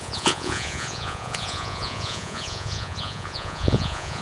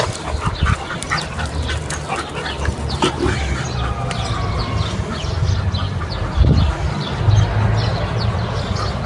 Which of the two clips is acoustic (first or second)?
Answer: second